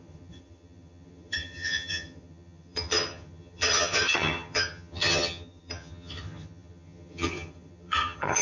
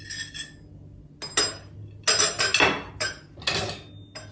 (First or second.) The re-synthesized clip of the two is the first